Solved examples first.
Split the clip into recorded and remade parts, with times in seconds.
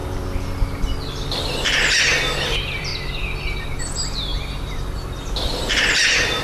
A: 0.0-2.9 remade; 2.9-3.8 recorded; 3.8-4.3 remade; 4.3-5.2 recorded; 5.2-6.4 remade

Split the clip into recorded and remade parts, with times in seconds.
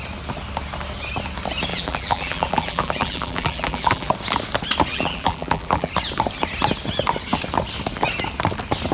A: 0.0-1.7 recorded; 1.7-4.1 remade; 4.1-4.9 recorded; 4.9-5.9 remade; 5.9-8.9 recorded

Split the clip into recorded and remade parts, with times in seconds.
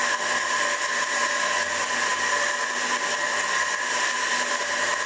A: 0.0-5.1 recorded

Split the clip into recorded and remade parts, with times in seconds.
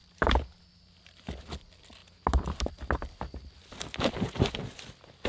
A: 0.0-5.3 recorded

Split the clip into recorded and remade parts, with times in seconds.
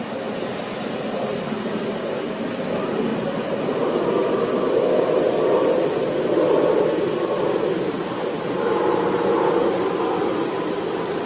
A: 0.0-11.3 recorded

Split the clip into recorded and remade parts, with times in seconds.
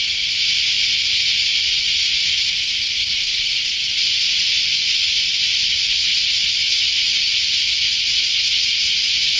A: 0.0-5.5 recorded; 5.5-6.1 remade; 6.1-9.4 recorded